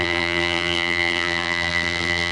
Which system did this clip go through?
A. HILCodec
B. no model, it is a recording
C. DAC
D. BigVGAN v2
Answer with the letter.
D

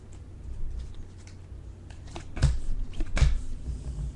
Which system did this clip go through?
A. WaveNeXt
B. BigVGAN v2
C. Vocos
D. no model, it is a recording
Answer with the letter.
D